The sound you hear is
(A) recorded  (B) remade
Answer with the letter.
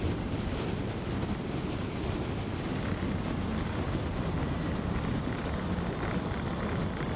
A